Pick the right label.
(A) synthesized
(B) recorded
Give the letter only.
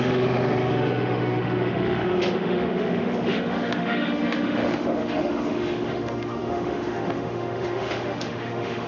A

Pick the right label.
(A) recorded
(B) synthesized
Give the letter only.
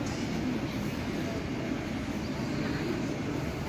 A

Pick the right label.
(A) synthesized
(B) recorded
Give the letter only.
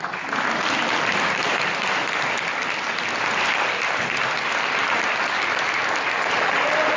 B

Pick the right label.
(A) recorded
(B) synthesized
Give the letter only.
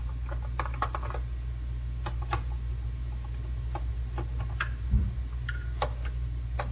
A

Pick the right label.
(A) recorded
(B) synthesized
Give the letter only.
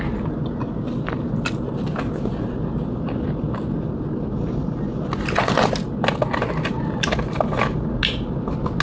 A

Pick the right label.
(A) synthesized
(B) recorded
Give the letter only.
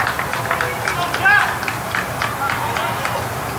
B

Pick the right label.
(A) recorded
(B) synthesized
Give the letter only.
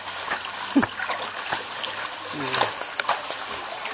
A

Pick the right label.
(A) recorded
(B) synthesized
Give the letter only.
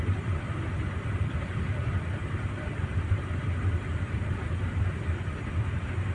B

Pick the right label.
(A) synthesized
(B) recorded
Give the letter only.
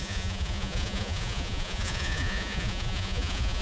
A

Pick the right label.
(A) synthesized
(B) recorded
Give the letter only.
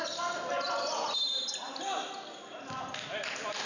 B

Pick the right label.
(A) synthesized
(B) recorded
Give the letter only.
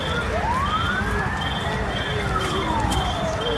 B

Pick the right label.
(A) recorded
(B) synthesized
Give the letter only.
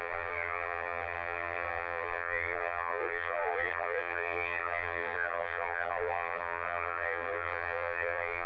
B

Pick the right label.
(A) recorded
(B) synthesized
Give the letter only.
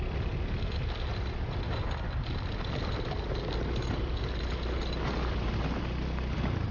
A